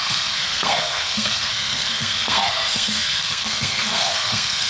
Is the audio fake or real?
fake